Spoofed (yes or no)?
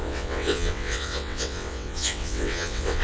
yes